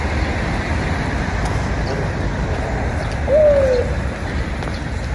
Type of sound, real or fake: real